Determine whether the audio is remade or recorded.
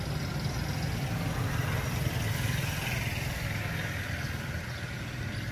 recorded